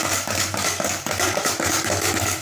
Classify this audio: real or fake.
fake